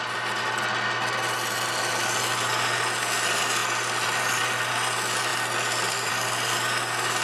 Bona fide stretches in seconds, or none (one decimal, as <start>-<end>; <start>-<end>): 0.0-7.2